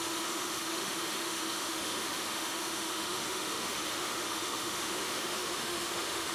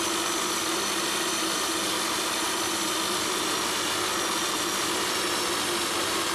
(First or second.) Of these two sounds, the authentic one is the second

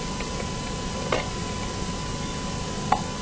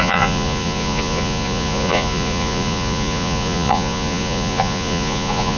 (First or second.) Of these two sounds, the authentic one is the first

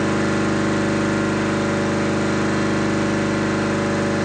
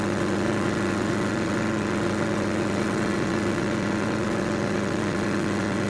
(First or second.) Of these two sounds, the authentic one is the first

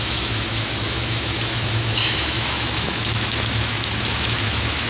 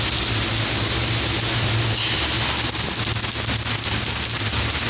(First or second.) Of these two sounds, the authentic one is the second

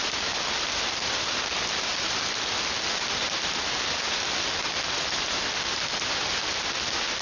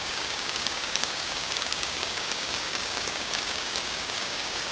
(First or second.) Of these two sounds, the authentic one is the first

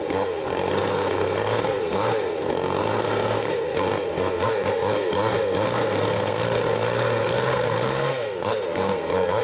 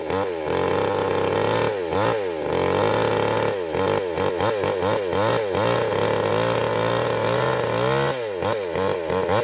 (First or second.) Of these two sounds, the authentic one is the second